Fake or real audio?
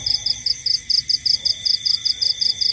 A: real